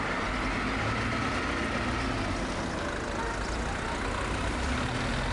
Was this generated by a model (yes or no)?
no